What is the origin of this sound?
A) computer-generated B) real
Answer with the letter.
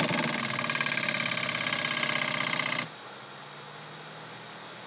B